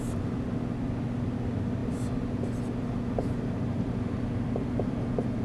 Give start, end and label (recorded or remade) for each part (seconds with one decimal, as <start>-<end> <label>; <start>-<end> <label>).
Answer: 0.0-5.4 recorded